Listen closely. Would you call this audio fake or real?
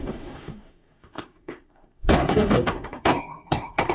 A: fake